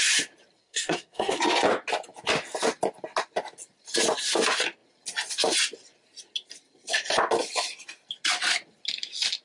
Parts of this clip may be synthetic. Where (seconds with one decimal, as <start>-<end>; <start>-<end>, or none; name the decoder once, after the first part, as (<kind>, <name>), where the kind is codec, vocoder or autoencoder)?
0.6-1.4 (codec, SNAC)